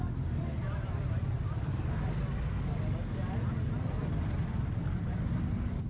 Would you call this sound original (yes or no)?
yes